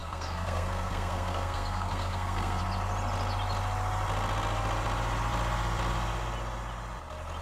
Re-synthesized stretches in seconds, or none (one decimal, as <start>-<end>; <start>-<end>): 0.0-2.6